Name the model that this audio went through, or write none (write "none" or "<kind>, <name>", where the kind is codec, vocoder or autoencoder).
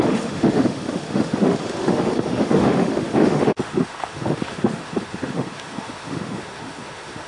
autoencoder, DAC-VAE